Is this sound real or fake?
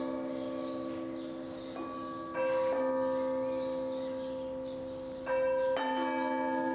real